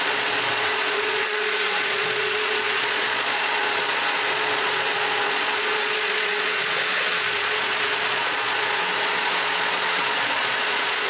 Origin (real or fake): fake